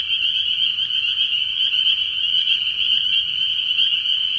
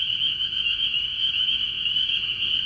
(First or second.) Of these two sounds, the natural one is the first